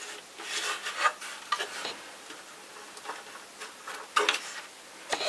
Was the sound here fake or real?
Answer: real